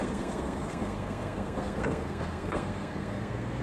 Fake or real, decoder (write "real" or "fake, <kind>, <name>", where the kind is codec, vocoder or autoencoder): fake, codec, SNAC